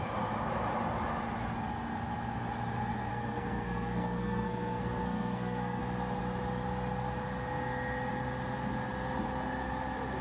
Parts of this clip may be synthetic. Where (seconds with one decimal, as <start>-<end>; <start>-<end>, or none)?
3.1-5.8